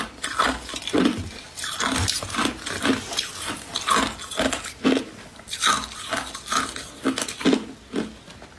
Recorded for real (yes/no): yes